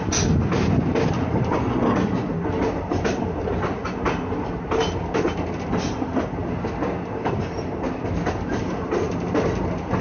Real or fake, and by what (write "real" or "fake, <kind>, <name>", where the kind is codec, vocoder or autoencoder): real